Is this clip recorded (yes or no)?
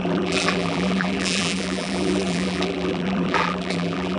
no